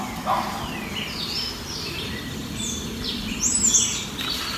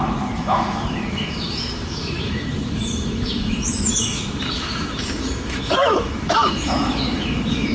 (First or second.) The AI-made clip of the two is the second